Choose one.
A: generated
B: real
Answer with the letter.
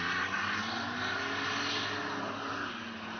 B